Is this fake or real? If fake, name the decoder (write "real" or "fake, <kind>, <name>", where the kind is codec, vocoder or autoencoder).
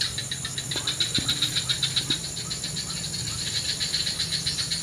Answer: real